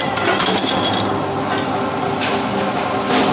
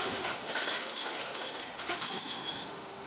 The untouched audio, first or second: first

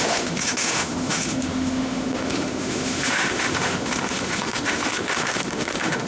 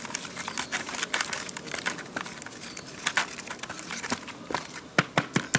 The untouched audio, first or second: second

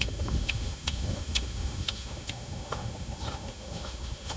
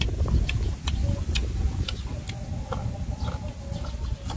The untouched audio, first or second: second